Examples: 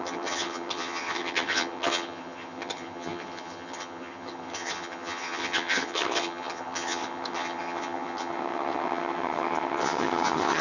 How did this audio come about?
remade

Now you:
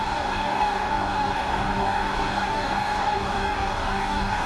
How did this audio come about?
remade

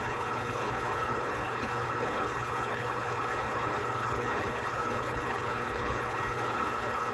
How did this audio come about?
remade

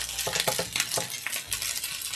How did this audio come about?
recorded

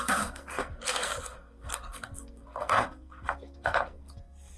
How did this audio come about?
remade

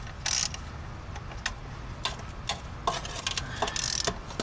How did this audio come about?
recorded